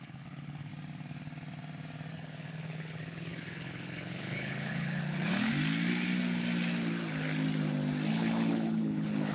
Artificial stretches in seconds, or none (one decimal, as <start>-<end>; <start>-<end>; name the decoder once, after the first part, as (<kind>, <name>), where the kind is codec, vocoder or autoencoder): 0.0-0.7 (codec, HILCodec); 2.1-5.5; 8.1-9.3